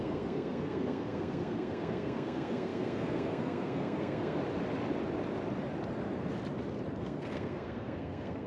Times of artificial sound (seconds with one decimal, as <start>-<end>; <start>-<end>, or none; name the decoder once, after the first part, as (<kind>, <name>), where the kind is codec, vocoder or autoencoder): 0.0-4.4 (codec, SNAC); 7.0-8.5